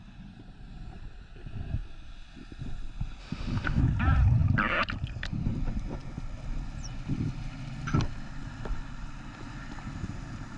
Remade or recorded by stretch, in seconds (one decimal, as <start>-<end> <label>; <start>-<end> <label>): 0.0-3.2 recorded; 3.2-3.8 remade; 3.8-10.6 recorded